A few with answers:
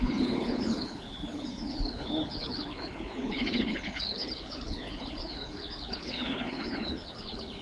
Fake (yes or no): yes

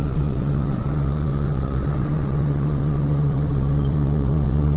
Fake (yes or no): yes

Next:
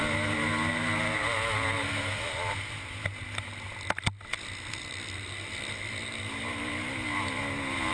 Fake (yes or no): no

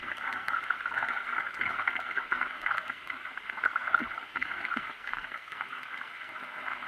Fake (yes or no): yes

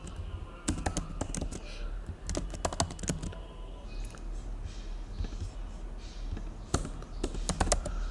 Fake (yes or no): no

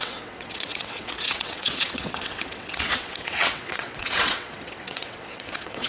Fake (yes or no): yes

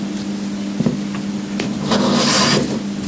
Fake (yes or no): no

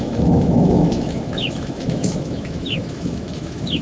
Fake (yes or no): yes